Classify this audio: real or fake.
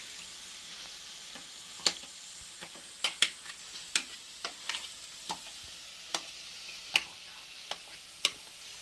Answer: real